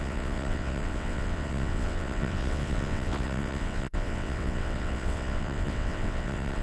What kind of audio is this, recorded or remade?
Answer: remade